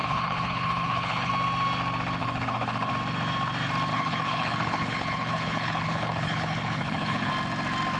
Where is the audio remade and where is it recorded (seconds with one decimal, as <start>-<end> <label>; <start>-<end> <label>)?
0.0-1.3 remade; 1.3-2.2 recorded; 2.2-2.9 remade; 2.9-3.9 recorded; 3.9-7.3 remade; 7.3-8.0 recorded